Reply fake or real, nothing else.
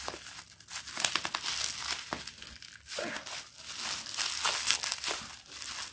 real